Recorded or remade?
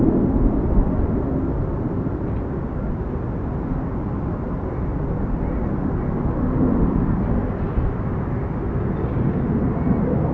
recorded